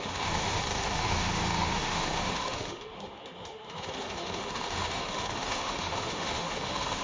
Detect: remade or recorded remade